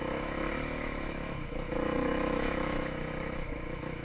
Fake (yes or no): yes